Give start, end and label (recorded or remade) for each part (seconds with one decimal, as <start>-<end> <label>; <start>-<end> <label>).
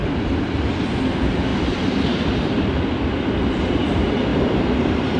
0.0-1.5 recorded; 1.5-2.8 remade; 2.8-4.3 recorded; 4.3-5.2 remade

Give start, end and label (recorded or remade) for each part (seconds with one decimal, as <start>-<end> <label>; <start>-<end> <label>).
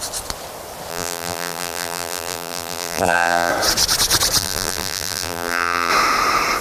0.0-0.9 recorded; 0.9-3.5 remade; 3.5-4.4 recorded; 4.4-5.9 remade; 5.9-6.6 recorded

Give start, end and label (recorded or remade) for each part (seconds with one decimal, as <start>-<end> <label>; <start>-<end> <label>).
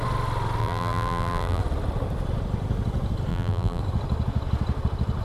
0.0-0.6 recorded; 0.6-1.6 remade; 1.6-3.3 recorded; 3.3-3.8 remade; 3.8-5.2 recorded